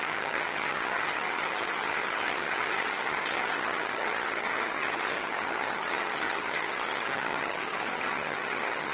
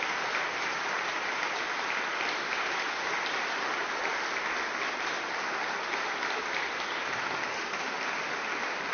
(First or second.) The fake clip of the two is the first